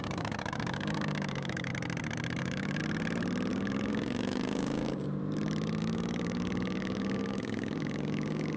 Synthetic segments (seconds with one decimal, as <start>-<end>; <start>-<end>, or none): 0.0-1.7; 2.4-2.8; 3.5-5.2; 5.8-8.6